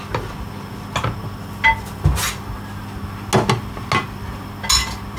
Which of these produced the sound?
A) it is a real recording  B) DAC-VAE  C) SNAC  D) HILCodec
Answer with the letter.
A